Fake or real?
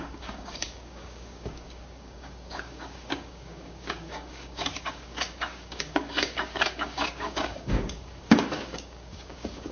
fake